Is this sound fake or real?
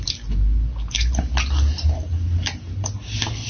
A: real